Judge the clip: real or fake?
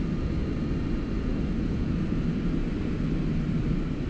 real